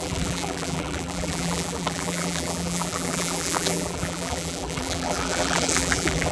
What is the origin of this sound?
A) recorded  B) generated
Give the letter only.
B